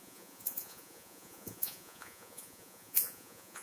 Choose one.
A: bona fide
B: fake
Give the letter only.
B